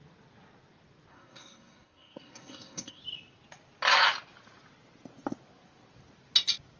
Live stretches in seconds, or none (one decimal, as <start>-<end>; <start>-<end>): 0.0-1.1; 3.0-6.8